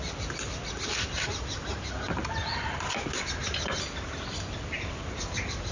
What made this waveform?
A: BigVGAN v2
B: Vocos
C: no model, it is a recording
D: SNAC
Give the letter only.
C